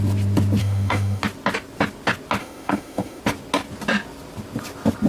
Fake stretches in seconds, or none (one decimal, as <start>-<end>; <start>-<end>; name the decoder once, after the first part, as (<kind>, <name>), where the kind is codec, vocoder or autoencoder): 0.6-1.2 (autoencoder, DAC-VAE); 2.4-3.2